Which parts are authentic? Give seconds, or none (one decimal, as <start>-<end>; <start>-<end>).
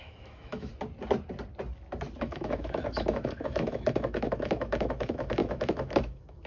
0.7-2.2